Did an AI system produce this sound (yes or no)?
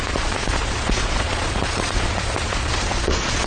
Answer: yes